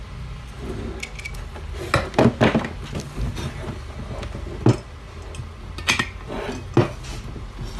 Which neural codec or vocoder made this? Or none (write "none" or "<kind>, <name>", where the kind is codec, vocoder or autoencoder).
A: none